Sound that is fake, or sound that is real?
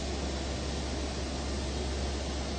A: real